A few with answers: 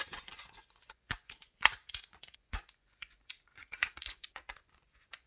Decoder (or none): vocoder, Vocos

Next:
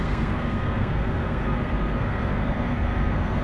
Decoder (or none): codec, SNAC